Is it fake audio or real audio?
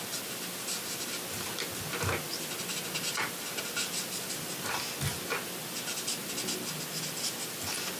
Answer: real